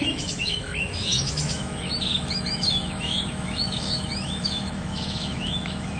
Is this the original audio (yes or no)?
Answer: no